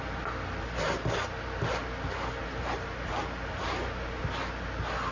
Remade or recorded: recorded